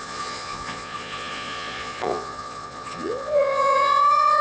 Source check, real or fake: fake